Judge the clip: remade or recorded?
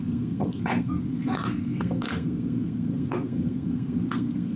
remade